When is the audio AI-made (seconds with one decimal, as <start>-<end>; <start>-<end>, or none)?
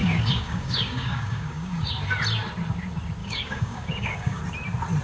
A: 0.0-1.9; 3.2-4.4